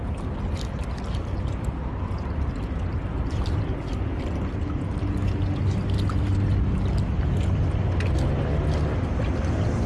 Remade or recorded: recorded